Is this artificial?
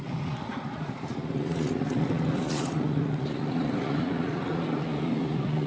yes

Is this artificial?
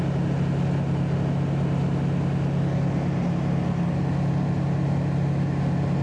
no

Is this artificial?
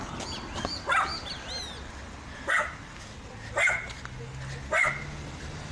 no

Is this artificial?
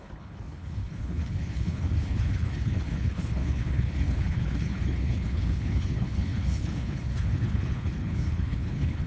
yes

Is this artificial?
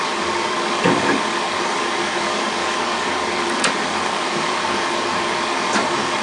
yes